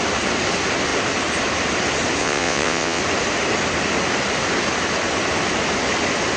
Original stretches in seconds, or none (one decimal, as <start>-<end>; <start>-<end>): 0.0-2.2; 3.0-6.4